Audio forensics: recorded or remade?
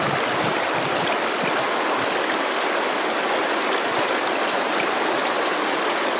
recorded